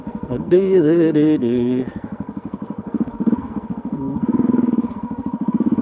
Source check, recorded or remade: remade